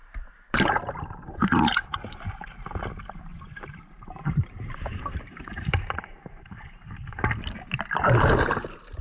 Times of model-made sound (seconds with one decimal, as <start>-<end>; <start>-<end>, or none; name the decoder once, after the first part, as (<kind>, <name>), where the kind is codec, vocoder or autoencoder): 0.0-2.6 (vocoder, BigVGAN v2); 3.3-7.3

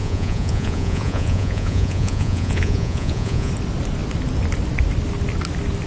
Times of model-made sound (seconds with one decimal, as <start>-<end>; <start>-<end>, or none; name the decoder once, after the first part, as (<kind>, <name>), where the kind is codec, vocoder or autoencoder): 0.0-3.5 (vocoder, Vocos)